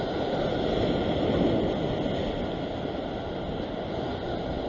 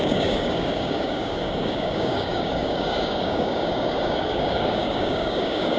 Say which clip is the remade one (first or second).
second